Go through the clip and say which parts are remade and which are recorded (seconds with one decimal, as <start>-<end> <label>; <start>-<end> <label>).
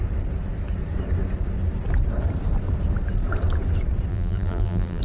0.0-4.1 recorded; 4.1-5.0 remade